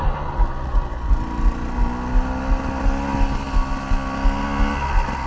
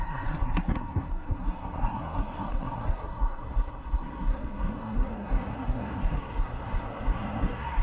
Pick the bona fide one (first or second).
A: first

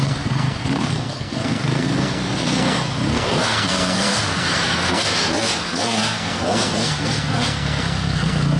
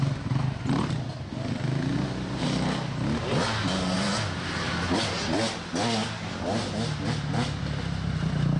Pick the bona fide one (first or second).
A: second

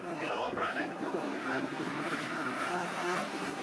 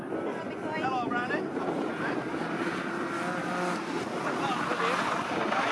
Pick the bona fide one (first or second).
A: second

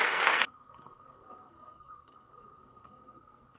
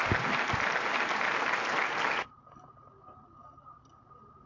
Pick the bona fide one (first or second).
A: second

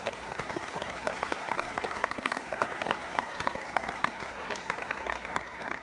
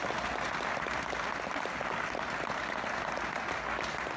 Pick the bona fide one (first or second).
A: second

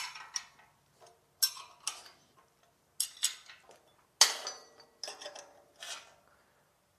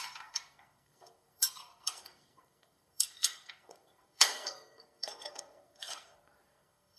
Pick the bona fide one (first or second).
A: first